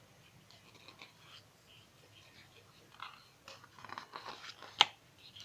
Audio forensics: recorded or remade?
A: recorded